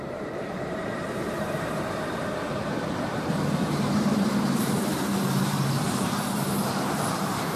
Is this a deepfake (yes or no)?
yes